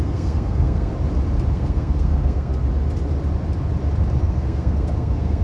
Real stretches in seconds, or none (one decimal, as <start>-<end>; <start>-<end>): 0.9-1.5; 2.5-4.2